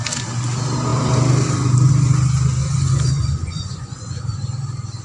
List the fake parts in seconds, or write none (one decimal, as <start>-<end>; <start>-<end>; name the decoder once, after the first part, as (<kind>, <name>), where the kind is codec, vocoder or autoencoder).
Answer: 2.6-4.2 (vocoder, Vocos)